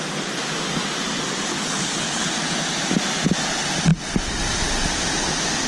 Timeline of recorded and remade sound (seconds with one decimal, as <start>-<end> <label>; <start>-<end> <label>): 0.0-1.5 recorded; 1.5-2.3 remade; 2.3-5.7 recorded